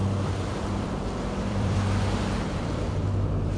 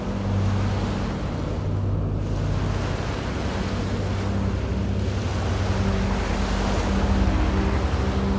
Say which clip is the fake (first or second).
first